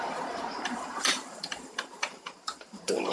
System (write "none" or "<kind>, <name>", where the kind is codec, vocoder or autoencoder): vocoder, BigVGAN v2